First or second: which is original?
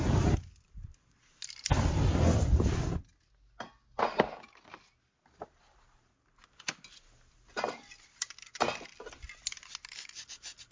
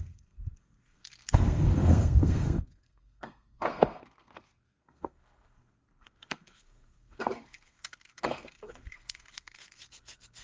first